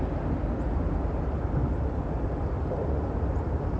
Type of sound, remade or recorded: recorded